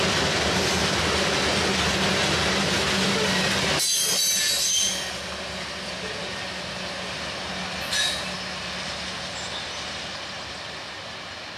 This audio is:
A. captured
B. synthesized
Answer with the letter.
A